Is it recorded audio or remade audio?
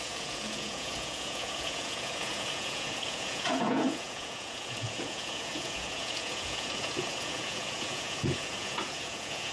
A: remade